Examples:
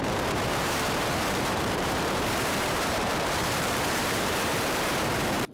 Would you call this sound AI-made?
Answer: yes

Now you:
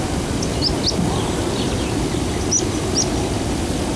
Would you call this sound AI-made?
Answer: no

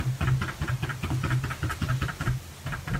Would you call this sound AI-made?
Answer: no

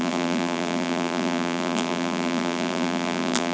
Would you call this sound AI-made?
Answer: yes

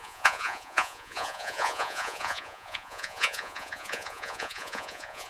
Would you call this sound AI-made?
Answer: yes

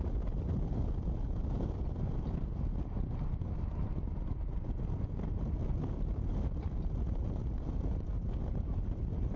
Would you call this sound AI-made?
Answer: yes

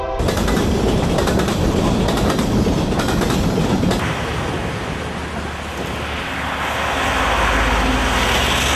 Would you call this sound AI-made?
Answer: no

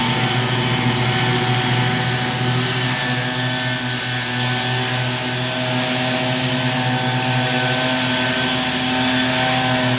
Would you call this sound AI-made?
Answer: no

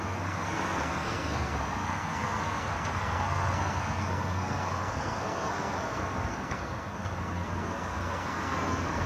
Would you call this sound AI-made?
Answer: yes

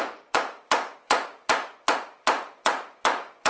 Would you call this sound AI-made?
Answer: yes